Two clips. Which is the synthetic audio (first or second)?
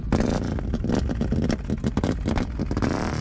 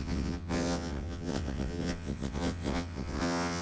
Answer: second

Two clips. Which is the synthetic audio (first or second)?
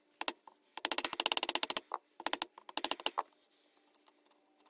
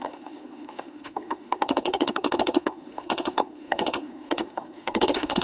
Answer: second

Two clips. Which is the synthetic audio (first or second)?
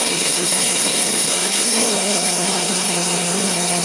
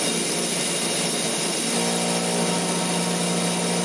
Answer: first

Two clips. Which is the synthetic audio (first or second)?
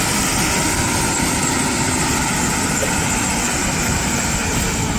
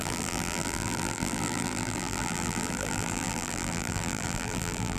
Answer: second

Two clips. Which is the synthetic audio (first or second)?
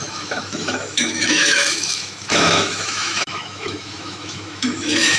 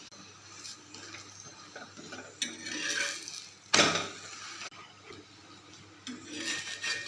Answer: first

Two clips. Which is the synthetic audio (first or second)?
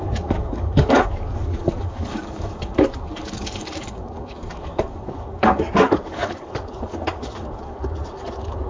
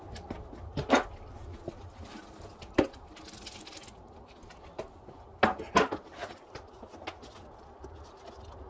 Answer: first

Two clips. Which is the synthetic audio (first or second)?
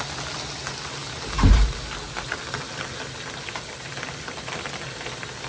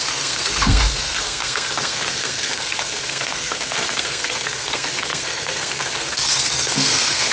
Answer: second